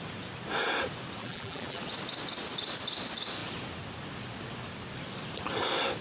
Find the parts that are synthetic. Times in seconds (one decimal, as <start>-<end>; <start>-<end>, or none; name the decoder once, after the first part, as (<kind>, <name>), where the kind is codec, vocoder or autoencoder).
1.2-1.8 (vocoder, BigVGAN v2)